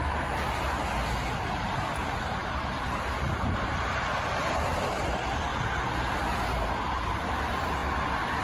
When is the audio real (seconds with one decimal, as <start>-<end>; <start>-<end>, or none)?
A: 0.8-1.5; 5.5-6.7; 7.8-8.4

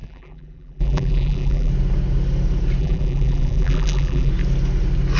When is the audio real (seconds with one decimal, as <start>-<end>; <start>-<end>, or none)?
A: 1.7-2.8; 4.3-5.2

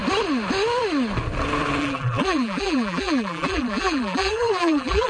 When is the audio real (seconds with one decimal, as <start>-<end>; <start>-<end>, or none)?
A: 0.0-1.8

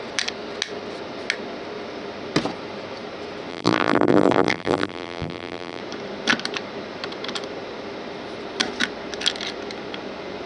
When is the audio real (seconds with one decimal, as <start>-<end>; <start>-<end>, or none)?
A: 0.0-3.5; 5.8-10.5

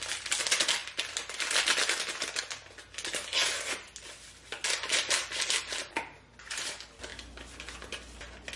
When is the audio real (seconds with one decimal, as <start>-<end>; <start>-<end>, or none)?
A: 0.0-8.6

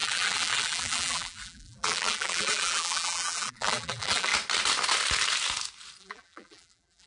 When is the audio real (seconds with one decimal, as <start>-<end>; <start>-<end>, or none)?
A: 4.3-6.0

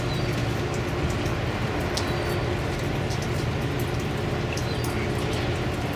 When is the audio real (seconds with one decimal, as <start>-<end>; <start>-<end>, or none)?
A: 0.0-0.4; 1.6-6.0